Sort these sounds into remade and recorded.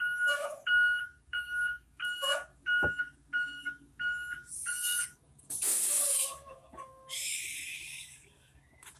remade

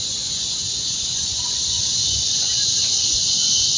remade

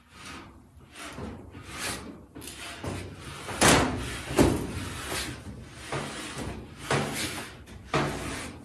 recorded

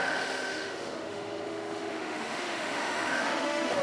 remade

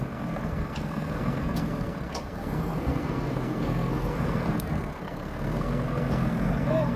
remade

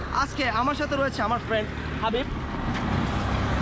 recorded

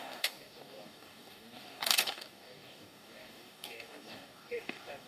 remade